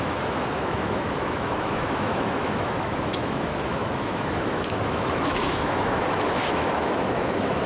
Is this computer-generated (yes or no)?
yes